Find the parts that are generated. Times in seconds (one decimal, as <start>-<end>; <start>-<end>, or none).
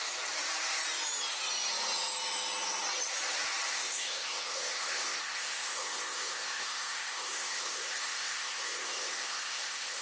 3.7-10.0